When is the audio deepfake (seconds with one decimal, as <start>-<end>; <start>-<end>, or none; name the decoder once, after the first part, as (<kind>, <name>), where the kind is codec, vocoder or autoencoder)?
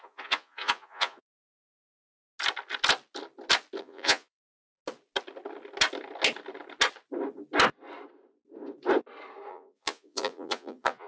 0.0-1.3 (vocoder, Vocos); 3.8-4.8; 9.5-11.1